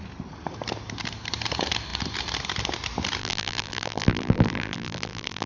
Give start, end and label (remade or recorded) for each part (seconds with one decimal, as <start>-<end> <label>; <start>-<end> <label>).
0.0-3.2 recorded; 3.2-5.5 remade

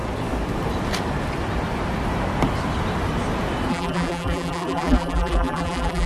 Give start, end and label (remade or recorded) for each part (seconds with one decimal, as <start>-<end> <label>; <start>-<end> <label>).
0.0-3.7 recorded; 3.7-6.1 remade

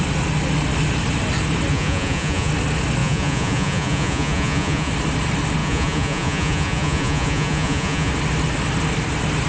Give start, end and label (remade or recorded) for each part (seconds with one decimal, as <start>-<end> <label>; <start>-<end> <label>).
0.0-1.7 recorded; 1.7-2.5 remade; 2.5-3.0 recorded; 3.0-4.9 remade; 4.9-5.6 recorded; 5.6-8.1 remade; 8.1-9.5 recorded

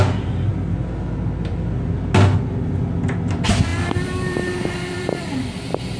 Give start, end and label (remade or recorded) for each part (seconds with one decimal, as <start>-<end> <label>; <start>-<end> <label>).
0.0-3.7 recorded; 3.7-5.2 remade; 5.2-6.0 recorded